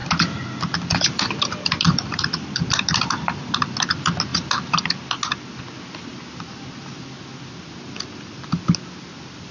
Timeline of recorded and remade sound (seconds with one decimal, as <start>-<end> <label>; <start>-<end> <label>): 0.0-3.8 remade; 3.8-4.3 recorded; 4.3-5.0 remade; 5.0-9.5 recorded